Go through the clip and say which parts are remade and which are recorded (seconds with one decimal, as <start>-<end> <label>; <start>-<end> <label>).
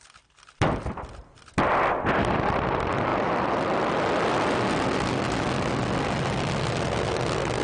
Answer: 0.0-7.6 recorded